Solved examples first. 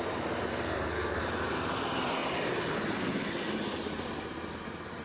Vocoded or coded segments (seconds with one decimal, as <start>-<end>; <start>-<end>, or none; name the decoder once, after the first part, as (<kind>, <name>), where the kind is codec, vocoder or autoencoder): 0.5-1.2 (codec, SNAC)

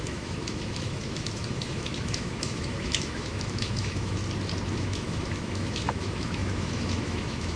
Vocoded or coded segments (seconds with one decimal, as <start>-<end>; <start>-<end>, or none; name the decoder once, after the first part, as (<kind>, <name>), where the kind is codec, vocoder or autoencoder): 0.0-4.2 (autoencoder, DAC-VAE); 4.7-7.6

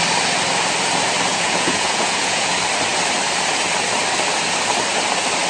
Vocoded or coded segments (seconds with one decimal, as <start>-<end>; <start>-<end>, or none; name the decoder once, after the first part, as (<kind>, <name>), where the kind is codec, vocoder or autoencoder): 1.3-2.5 (vocoder, Vocos)